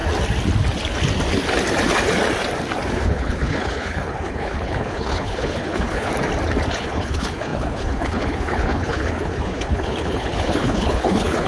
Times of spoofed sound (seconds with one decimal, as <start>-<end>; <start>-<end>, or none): 2.9-6.1; 6.7-11.5